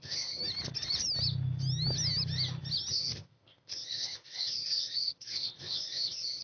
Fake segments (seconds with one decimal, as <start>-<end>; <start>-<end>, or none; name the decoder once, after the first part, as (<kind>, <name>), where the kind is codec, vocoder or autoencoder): 0.0-0.4 (codec, ZipCodec); 2.9-6.4